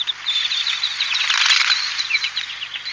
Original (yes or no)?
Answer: yes